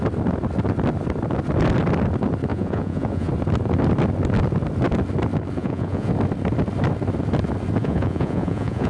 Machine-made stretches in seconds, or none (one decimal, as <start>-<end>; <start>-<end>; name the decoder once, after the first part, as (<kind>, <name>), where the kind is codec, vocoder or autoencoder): 2.5-3.3 (vocoder, Vocos); 5.6-6.1; 7.8-8.9